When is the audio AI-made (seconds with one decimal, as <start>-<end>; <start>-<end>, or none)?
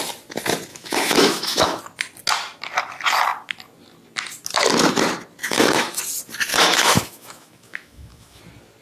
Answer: 0.7-1.8; 5.4-6.0; 6.5-8.4